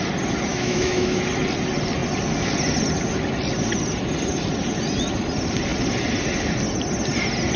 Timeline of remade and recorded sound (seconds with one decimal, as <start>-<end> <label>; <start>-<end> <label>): 0.0-0.5 recorded; 0.5-1.2 remade; 1.2-7.6 recorded